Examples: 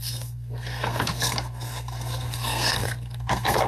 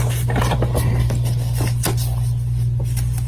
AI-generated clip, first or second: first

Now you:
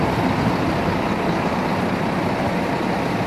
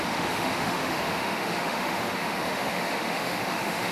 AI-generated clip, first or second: second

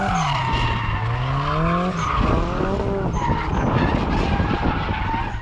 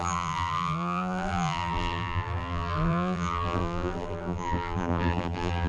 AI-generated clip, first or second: second